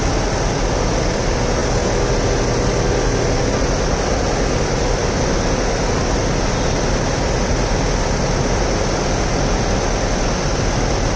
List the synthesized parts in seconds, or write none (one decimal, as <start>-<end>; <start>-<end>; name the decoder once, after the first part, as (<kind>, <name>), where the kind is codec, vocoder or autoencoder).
none